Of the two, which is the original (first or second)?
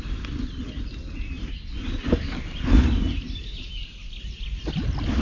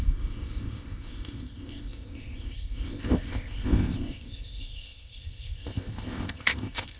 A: first